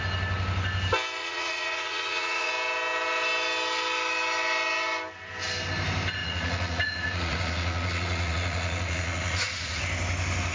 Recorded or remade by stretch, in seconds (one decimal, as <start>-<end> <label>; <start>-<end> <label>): 0.0-1.2 recorded; 1.2-2.5 remade; 2.5-6.2 recorded; 6.2-9.8 remade; 9.8-10.5 recorded